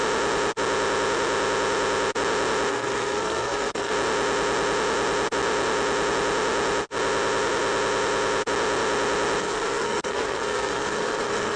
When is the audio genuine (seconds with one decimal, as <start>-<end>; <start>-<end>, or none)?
0.0-2.7; 3.9-9.4